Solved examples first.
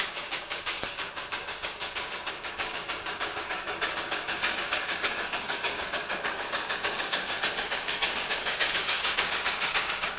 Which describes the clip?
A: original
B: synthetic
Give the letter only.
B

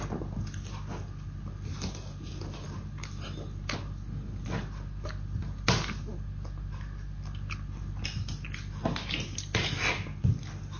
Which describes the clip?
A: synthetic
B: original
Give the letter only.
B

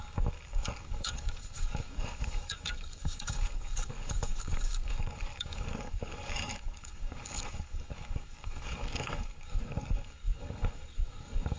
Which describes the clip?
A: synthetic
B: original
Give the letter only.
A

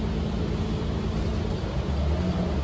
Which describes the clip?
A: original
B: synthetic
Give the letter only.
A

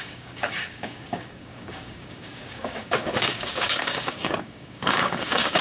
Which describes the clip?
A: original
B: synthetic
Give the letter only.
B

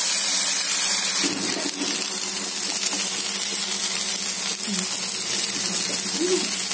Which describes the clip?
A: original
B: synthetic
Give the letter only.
A